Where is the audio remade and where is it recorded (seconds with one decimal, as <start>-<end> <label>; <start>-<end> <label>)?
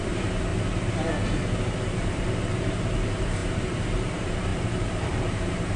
0.0-0.5 remade; 0.5-1.8 recorded; 1.8-5.8 remade